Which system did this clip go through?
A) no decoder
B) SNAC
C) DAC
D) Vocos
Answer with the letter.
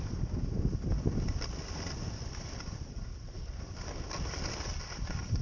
A